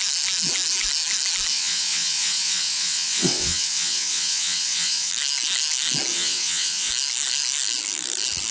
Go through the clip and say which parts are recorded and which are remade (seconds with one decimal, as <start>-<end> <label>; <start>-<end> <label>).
0.0-1.5 recorded; 1.5-5.1 remade; 5.1-6.1 recorded; 6.1-6.9 remade; 6.9-8.5 recorded